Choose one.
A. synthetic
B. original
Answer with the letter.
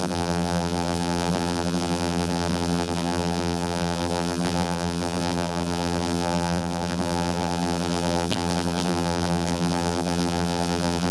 A